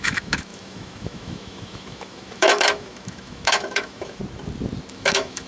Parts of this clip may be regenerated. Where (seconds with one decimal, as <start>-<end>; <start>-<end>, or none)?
0.0-4.2; 4.9-5.5